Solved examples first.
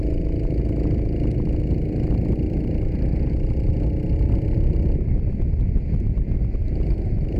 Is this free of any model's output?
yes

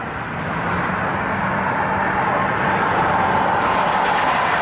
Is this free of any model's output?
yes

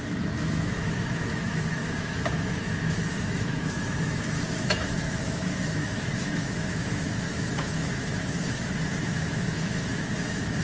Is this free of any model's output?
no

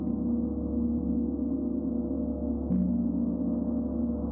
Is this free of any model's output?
yes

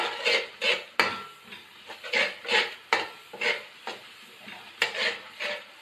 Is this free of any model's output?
yes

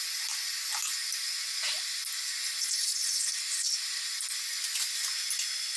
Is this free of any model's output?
yes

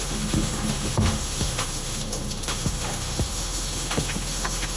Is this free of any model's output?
no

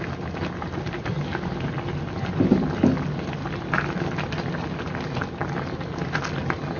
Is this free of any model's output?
yes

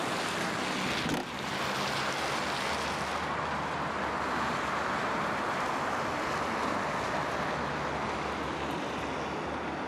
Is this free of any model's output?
yes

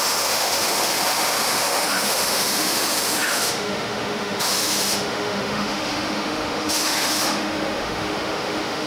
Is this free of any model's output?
no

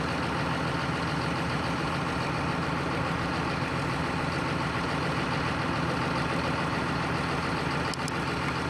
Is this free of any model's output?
yes